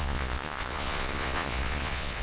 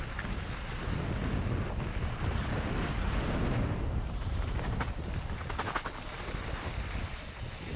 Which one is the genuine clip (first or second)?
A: second